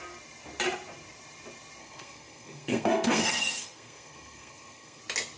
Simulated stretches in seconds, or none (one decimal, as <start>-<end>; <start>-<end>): 1.8-5.0